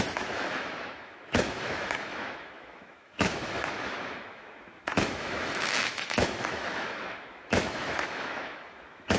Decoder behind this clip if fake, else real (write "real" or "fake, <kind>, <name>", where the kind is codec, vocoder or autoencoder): fake, autoencoder, DAC-VAE